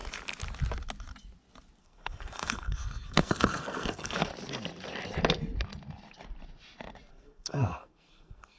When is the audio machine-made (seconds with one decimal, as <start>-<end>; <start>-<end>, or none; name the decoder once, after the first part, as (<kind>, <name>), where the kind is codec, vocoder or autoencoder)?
1.8-4.3 (codec, SNAC); 7.1-8.6